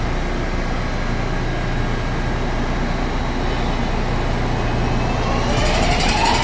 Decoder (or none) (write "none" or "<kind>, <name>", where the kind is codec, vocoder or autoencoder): none